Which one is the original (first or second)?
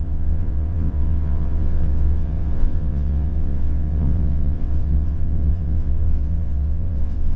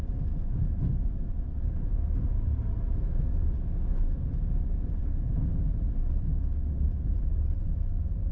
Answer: second